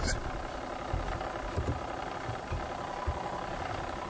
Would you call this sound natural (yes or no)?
yes